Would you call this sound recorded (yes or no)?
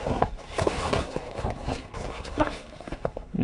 no